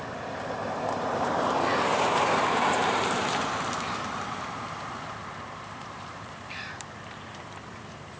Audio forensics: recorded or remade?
remade